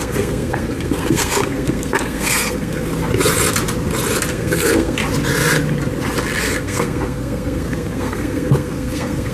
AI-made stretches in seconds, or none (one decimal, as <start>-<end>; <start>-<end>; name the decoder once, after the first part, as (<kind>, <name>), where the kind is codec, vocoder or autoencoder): 0.0-2.9 (codec, SNAC); 4.3-5.0; 6.4-9.3